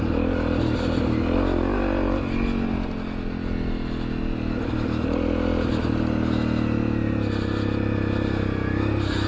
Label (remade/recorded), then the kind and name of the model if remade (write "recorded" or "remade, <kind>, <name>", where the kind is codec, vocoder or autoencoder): recorded